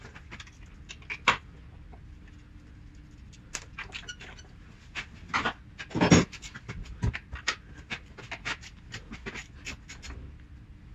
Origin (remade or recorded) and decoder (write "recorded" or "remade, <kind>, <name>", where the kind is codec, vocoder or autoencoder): recorded